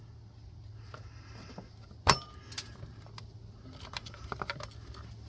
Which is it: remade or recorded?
recorded